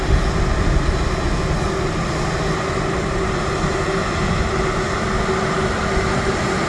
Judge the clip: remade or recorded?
recorded